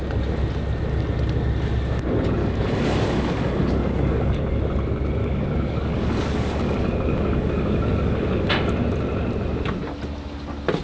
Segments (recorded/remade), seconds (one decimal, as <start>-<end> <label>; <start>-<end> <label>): 0.0-2.4 recorded; 2.4-4.6 remade; 4.6-5.2 recorded; 5.2-8.5 remade; 8.5-10.8 recorded